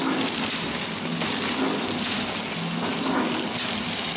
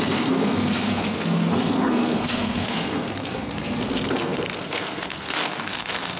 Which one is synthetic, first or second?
second